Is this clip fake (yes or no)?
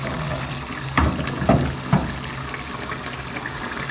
no